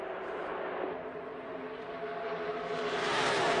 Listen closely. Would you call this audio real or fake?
fake